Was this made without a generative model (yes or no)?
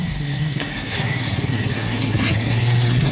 no